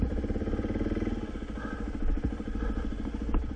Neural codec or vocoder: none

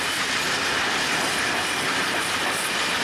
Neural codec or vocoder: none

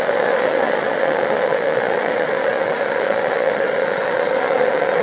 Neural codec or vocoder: vocoder, Vocos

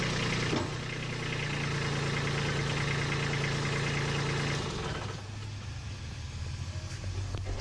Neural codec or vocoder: none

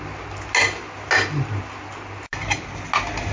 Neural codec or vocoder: none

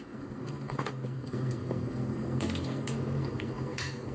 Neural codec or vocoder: codec, SNAC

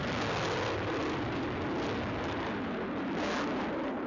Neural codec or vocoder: none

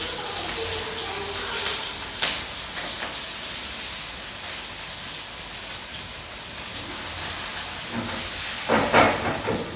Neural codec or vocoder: none